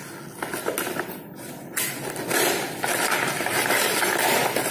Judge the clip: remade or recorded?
recorded